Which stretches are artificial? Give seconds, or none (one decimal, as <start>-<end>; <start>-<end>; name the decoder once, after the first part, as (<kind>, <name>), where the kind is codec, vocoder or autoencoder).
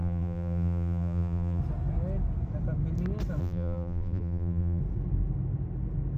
0.0-1.6 (vocoder, BigVGAN v2); 3.4-4.8